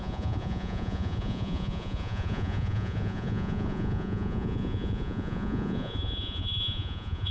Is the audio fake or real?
fake